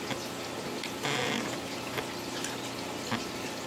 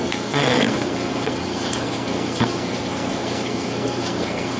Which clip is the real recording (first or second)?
first